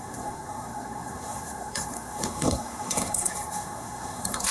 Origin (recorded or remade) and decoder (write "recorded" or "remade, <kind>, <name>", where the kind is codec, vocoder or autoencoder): remade, codec, SNAC